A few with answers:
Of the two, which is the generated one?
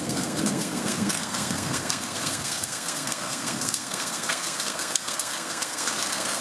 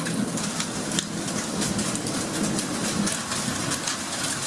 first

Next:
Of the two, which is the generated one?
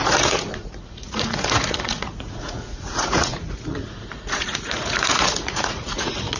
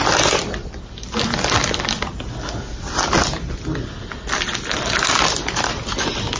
first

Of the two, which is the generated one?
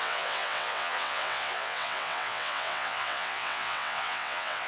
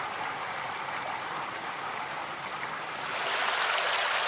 first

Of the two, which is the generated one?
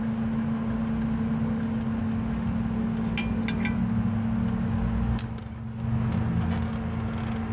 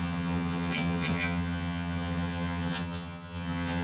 second